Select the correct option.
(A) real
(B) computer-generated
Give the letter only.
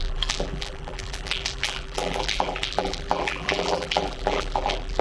B